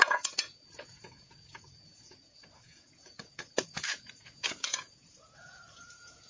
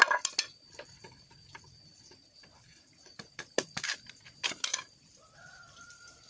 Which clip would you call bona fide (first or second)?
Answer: second